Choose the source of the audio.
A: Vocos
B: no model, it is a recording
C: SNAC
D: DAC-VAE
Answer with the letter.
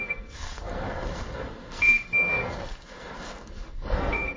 C